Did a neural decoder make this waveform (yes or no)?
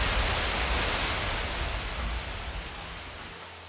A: no